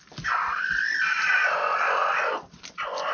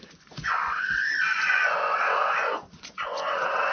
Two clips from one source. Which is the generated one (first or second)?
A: second